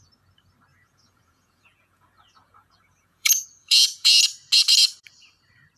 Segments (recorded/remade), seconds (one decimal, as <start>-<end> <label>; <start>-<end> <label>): 0.0-0.7 recorded; 0.7-4.2 remade; 4.2-5.8 recorded